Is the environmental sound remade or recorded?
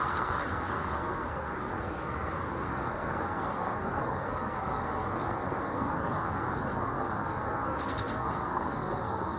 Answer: remade